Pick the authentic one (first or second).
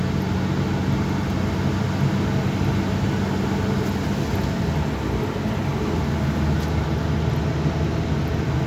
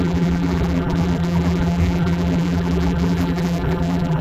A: first